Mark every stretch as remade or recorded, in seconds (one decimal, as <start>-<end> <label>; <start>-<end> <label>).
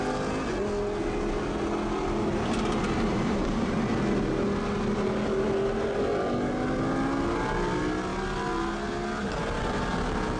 0.0-3.1 recorded; 3.1-3.7 remade; 3.7-10.4 recorded